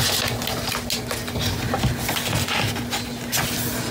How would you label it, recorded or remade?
recorded